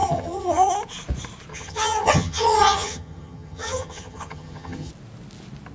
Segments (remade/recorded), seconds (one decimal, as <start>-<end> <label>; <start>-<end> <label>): 0.0-0.7 remade; 0.7-1.5 recorded; 1.5-4.9 remade; 4.9-5.7 recorded